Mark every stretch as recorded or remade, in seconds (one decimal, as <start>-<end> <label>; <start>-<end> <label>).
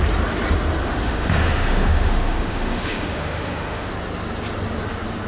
0.0-0.8 recorded; 0.8-3.9 remade; 3.9-5.3 recorded